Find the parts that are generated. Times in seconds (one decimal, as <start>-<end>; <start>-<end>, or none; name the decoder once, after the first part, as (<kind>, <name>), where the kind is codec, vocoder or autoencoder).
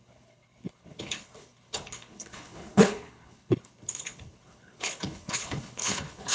0.0-6.3 (codec, HILCodec)